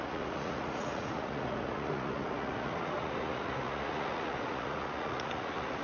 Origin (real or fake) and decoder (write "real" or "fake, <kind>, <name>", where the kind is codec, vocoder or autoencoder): fake, vocoder, Vocos